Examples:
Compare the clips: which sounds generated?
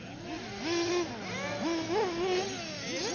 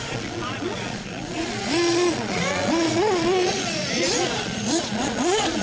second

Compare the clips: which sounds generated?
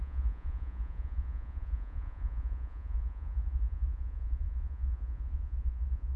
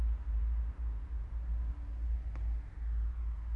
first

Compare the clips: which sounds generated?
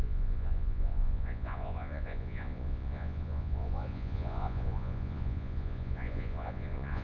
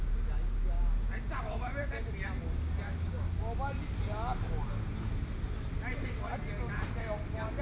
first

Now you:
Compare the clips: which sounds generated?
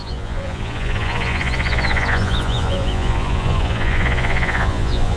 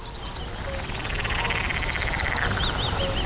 first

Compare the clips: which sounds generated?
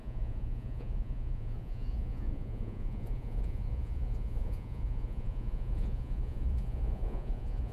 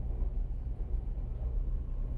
first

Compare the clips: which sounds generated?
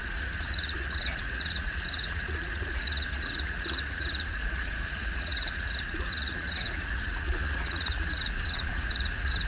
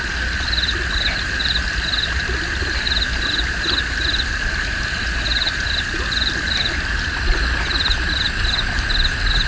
first